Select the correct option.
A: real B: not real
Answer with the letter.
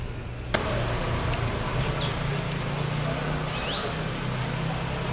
A